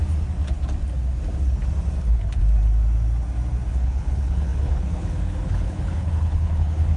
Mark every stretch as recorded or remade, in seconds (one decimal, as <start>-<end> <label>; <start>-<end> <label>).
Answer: 0.0-2.0 recorded; 2.0-2.4 remade; 2.4-3.7 recorded; 3.7-7.0 remade